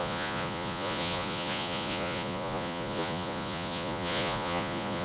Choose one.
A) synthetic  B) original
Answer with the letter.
A